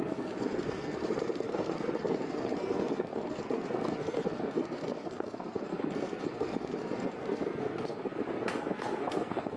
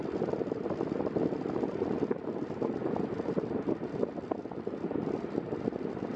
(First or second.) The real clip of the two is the second